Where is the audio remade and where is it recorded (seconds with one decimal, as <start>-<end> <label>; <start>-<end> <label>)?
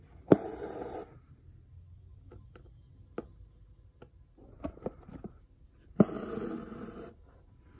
0.0-7.8 recorded